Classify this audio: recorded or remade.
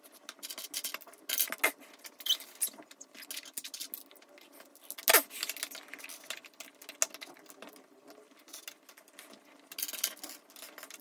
recorded